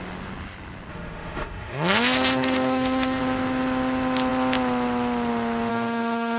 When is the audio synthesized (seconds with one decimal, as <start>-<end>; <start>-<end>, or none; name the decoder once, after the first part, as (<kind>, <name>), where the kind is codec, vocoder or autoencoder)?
0.9-3.2 (autoencoder, DAC-VAE); 5.7-6.4